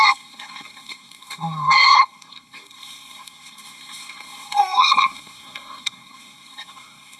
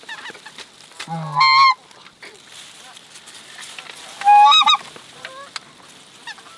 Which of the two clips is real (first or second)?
second